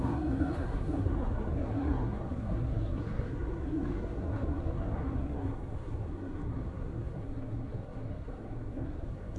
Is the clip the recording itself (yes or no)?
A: no